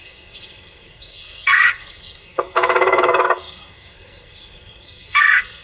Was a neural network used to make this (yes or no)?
yes